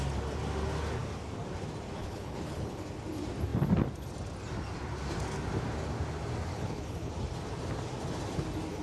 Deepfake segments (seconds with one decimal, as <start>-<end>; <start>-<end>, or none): 2.0-2.8; 6.5-7.1